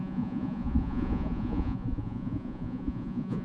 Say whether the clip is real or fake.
fake